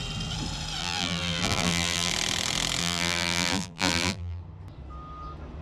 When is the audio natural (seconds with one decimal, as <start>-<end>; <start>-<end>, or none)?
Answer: 0.0-0.8; 2.1-2.8; 4.4-5.6